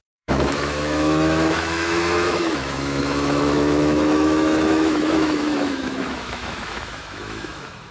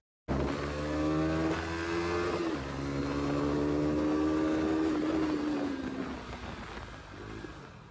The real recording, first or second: second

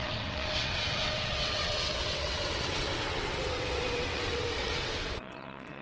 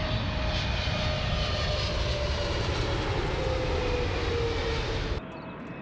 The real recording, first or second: second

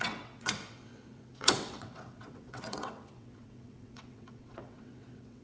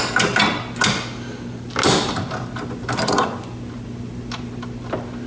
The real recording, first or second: second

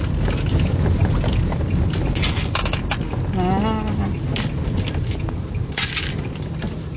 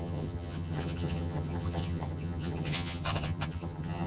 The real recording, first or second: first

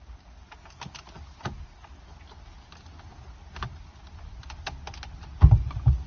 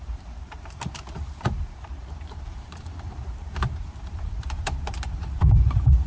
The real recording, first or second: first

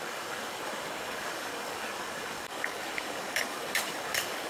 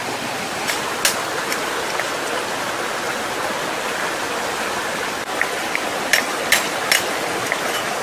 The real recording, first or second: second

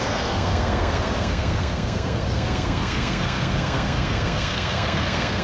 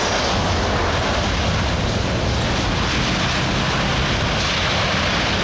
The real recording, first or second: second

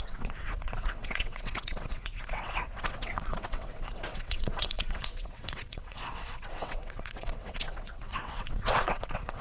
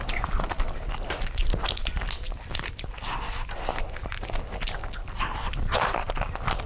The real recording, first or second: second